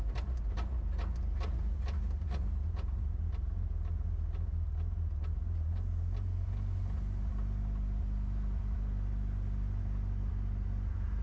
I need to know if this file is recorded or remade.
recorded